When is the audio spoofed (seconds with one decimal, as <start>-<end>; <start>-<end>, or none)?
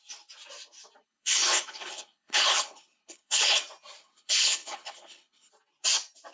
1.0-3.6; 4.0-5.5